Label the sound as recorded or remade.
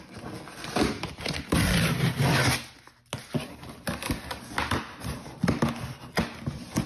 recorded